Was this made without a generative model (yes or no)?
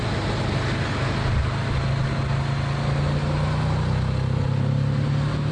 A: yes